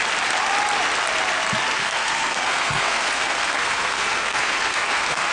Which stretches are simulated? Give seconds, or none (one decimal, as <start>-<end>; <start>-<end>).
1.8-5.3

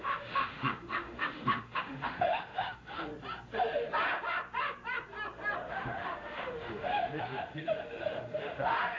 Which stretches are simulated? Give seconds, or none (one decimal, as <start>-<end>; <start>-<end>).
0.0-3.1; 5.7-9.0